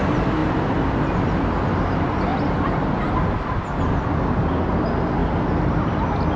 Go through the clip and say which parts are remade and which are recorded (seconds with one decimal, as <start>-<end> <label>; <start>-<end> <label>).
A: 0.0-6.4 recorded

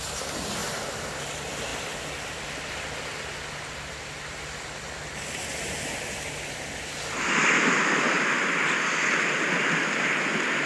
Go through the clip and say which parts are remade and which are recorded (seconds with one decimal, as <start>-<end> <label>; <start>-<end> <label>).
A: 0.0-10.7 recorded

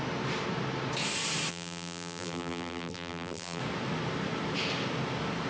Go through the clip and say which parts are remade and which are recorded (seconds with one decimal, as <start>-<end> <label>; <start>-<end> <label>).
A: 0.0-1.5 recorded; 1.5-3.6 remade; 3.6-5.5 recorded

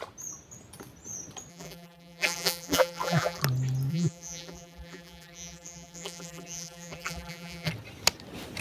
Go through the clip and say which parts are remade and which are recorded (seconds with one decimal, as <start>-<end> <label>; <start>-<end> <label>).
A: 0.0-1.5 recorded; 1.5-3.4 remade; 3.4-3.9 recorded; 3.9-7.7 remade; 7.7-8.6 recorded

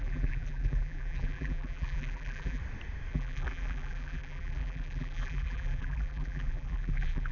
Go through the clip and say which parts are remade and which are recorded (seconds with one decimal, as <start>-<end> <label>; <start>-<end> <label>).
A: 0.0-2.6 remade; 2.6-3.1 recorded; 3.1-7.3 remade

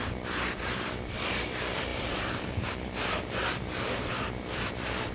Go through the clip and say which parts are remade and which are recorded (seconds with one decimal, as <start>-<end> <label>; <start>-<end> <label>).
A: 0.0-5.1 remade

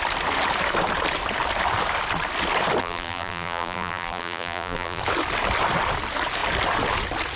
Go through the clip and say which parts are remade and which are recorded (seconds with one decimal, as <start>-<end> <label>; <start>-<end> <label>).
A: 0.0-2.8 recorded; 2.8-5.0 remade; 5.0-7.4 recorded

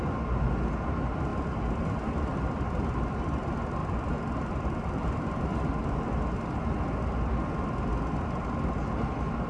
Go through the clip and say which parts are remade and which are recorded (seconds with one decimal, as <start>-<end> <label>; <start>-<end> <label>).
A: 0.0-3.8 recorded; 3.8-5.8 remade; 5.8-9.5 recorded